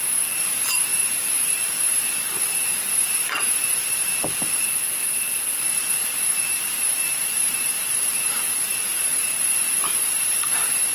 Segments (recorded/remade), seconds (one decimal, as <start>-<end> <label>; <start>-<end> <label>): 0.0-10.9 remade